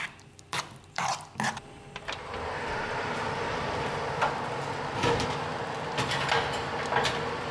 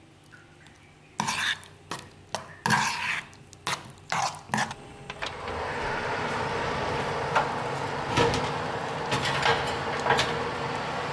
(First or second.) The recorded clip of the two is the second